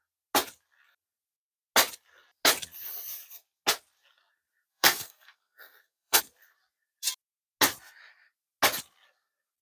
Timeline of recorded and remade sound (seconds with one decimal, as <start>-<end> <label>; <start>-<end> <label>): 0.0-4.7 recorded; 4.7-6.2 remade; 6.2-9.6 recorded